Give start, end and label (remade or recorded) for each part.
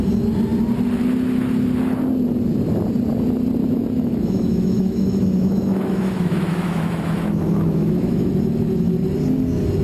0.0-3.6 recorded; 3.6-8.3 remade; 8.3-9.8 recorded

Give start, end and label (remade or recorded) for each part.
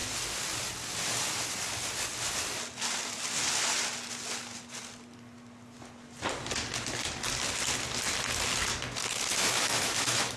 0.0-9.0 recorded; 9.0-10.4 remade